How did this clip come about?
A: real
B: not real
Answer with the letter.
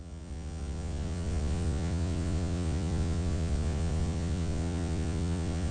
B